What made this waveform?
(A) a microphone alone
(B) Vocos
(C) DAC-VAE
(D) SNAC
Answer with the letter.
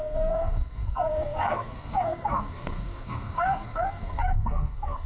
D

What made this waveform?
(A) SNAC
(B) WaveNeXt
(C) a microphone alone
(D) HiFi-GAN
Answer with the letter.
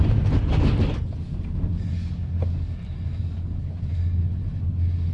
C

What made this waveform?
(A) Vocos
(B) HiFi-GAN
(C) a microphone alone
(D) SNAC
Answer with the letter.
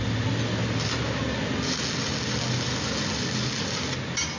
C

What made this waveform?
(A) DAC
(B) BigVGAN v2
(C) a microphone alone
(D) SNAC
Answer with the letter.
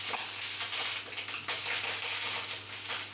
C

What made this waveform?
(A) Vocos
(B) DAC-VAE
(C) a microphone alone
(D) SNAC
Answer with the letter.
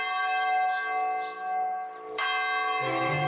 C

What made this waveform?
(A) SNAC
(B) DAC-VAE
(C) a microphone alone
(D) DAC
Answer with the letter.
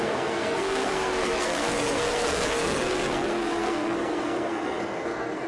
A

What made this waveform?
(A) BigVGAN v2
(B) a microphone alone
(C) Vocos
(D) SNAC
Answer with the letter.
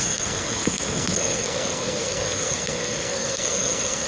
D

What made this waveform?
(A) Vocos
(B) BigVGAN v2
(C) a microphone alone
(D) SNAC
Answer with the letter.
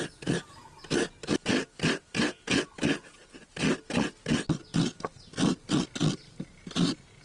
C